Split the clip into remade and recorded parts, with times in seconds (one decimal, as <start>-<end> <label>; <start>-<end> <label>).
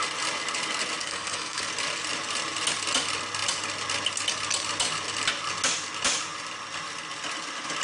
0.0-1.0 recorded; 1.0-1.7 remade; 1.7-7.8 recorded